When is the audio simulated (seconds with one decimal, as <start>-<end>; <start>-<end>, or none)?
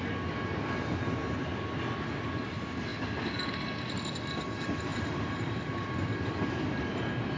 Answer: 4.9-6.8